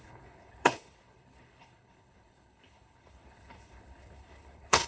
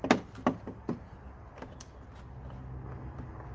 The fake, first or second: first